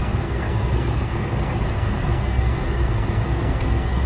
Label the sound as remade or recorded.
remade